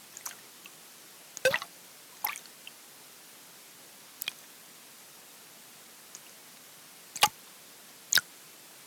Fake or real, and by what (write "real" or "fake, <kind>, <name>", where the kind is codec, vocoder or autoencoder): real